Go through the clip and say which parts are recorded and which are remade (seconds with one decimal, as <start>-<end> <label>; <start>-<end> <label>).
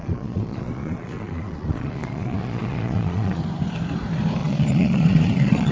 0.0-3.4 remade; 3.4-4.4 recorded; 4.4-5.7 remade